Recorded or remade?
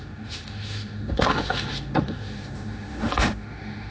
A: remade